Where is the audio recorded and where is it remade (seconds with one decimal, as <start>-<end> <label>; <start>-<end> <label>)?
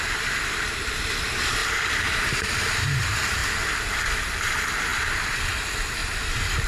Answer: 0.0-6.7 remade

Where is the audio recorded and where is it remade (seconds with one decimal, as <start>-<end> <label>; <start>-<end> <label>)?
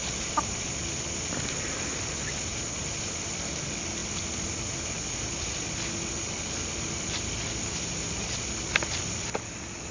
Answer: 0.0-9.9 recorded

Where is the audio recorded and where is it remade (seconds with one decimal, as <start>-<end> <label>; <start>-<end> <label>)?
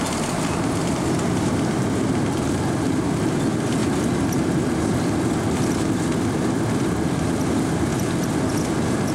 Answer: 0.0-9.1 recorded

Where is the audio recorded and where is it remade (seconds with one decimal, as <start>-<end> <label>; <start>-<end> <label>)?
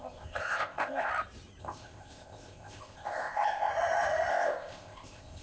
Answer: 0.0-1.1 remade; 1.1-1.6 recorded; 1.6-3.7 remade; 3.7-4.3 recorded; 4.3-5.4 remade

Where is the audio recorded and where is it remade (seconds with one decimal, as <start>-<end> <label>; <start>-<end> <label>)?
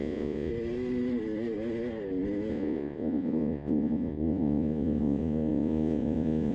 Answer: 0.0-0.5 remade; 0.5-2.5 recorded; 2.5-6.5 remade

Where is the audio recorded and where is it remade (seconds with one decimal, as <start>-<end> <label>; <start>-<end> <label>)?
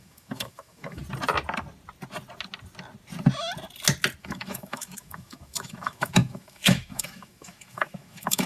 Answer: 0.0-1.0 remade; 1.0-4.2 recorded; 4.2-8.5 remade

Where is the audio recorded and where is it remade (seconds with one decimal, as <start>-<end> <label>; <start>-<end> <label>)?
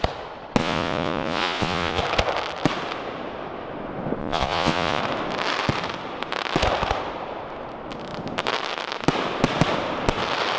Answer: 0.0-0.6 recorded; 0.6-2.0 remade; 2.0-4.2 recorded; 4.2-5.0 remade; 5.0-10.6 recorded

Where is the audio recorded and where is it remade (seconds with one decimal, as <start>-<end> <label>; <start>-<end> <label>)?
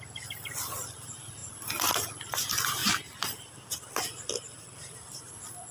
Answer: 0.0-2.8 recorded; 2.8-5.3 remade; 5.3-5.7 recorded